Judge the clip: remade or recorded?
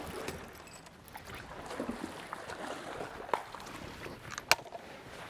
recorded